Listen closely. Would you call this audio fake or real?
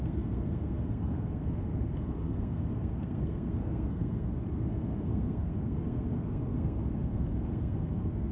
fake